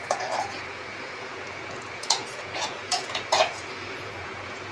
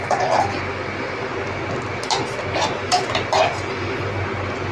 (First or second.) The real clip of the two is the second